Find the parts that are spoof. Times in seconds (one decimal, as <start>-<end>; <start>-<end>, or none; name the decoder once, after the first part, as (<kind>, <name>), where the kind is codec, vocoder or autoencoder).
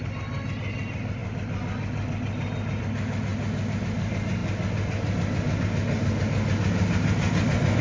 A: none